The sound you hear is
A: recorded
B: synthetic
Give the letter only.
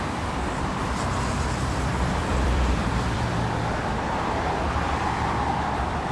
B